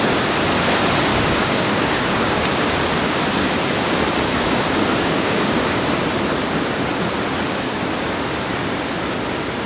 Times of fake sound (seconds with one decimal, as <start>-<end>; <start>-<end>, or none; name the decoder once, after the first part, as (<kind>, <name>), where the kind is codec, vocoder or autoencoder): 1.1-2.7 (codec, DAC); 4.3-5.8

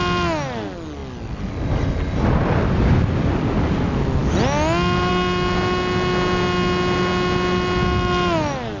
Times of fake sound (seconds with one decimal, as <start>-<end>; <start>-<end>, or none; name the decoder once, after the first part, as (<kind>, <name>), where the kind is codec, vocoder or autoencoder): none

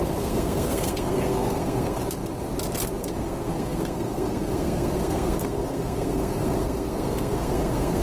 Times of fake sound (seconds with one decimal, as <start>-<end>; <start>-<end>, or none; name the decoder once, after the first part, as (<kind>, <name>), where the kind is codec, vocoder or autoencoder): 0.0-2.0 (codec, SNAC); 3.0-8.0

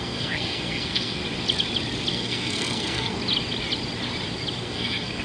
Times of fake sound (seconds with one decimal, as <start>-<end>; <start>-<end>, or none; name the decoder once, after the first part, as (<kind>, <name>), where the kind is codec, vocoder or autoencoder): 0.0-1.2 (codec, SNAC); 2.1-3.2; 4.6-5.2

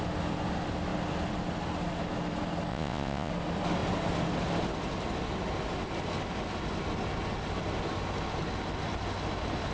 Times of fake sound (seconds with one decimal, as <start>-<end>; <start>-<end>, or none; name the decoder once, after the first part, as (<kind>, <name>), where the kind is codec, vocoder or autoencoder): 2.7-3.3 (vocoder, Vocos)